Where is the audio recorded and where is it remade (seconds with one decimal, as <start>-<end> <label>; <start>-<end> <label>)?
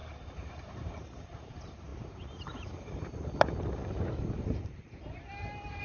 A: 0.0-5.8 remade